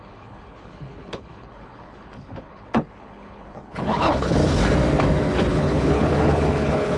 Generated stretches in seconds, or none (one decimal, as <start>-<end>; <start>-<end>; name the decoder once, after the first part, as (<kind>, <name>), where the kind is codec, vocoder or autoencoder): 0.0-4.4 (codec, HILCodec); 5.5-7.0